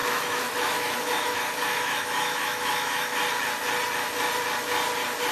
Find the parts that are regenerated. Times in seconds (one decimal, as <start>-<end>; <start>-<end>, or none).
0.0-3.2